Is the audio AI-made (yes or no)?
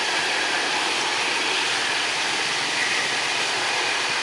no